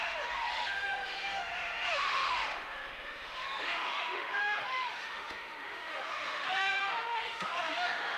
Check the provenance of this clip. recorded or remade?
remade